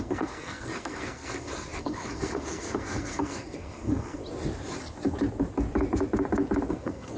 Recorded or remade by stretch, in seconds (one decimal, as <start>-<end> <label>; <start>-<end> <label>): 0.0-4.2 remade; 4.2-6.7 recorded; 6.7-7.2 remade